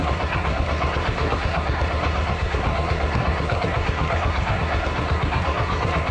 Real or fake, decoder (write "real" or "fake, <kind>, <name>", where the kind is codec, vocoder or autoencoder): fake, codec, SNAC